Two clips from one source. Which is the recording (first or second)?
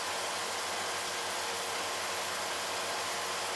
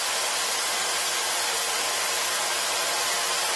first